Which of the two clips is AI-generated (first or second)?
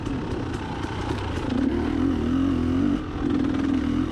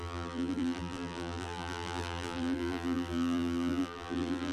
second